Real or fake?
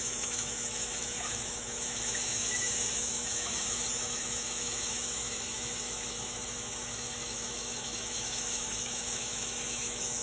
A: fake